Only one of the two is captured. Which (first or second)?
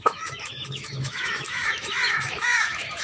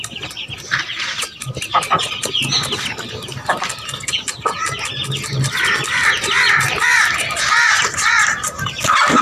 second